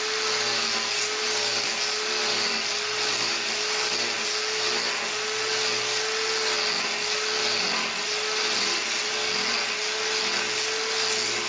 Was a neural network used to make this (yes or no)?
no